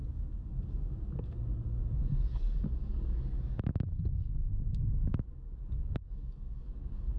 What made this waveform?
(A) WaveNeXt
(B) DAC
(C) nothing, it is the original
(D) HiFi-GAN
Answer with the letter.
B